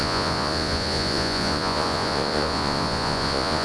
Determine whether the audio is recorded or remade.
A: remade